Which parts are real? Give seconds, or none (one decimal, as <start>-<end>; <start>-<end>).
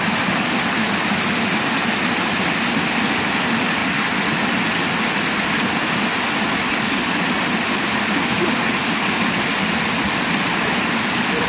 0.0-11.5